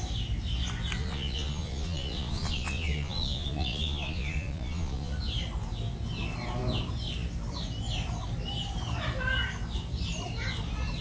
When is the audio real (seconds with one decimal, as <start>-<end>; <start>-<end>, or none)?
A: 0.0-1.0; 5.2-11.0